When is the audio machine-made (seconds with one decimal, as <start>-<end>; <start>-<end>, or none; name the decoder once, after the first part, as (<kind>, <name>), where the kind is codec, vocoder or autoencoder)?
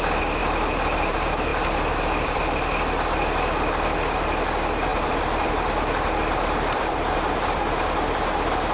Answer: 1.5-2.6 (vocoder, BigVGAN v2); 4.9-7.6